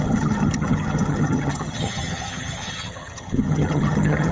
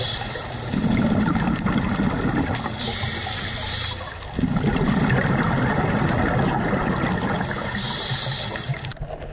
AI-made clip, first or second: first